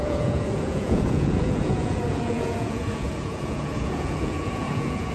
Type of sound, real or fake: fake